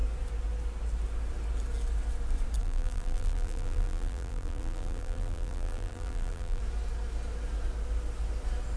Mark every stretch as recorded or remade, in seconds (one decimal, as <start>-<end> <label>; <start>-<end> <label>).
0.0-2.6 recorded; 2.6-6.6 remade; 6.6-8.8 recorded